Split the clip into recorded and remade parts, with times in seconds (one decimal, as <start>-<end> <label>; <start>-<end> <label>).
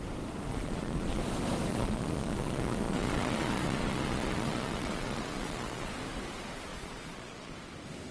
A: 0.0-0.5 recorded; 0.5-1.2 remade; 1.2-1.7 recorded; 1.7-5.9 remade; 5.9-6.7 recorded; 6.7-7.5 remade; 7.5-8.1 recorded